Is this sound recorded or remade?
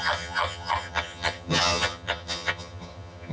remade